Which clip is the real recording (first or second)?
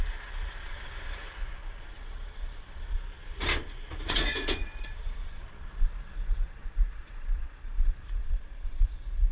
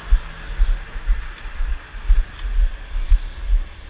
second